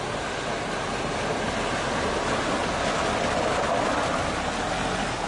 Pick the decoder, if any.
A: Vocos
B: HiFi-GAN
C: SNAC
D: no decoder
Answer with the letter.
D